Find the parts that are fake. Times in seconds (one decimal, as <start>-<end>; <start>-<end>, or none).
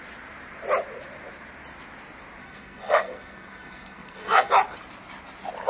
2.4-4.5